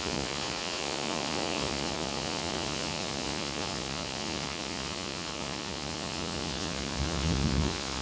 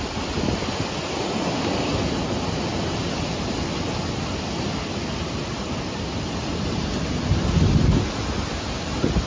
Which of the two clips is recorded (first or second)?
second